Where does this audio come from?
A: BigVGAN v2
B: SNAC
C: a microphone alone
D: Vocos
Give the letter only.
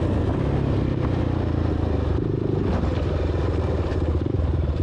C